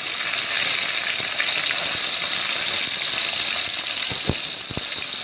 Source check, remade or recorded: recorded